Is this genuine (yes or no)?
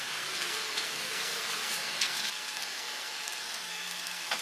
no